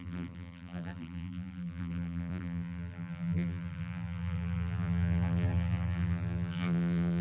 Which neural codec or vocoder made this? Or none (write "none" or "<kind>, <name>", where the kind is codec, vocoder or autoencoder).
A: vocoder, BigVGAN v2